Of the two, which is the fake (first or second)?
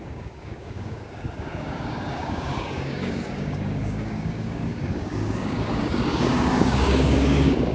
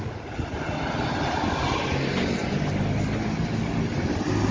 first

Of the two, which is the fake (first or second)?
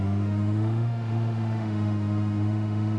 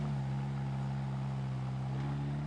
first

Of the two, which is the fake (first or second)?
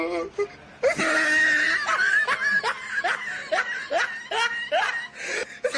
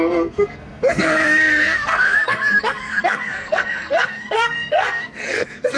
second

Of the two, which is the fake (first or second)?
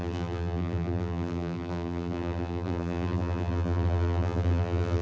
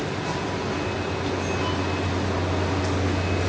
first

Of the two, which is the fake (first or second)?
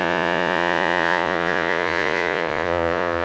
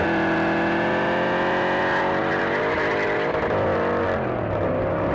first